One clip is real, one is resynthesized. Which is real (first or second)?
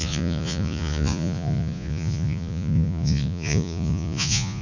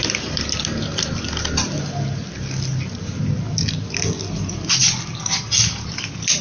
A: second